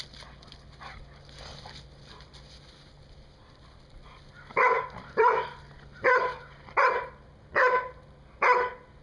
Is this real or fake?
real